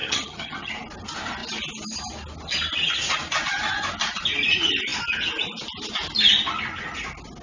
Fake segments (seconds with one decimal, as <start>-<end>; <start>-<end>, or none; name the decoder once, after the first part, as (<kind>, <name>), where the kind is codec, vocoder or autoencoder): 0.0-0.7 (vocoder, HiFi-GAN)